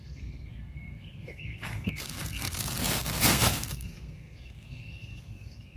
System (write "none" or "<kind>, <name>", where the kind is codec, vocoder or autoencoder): codec, SNAC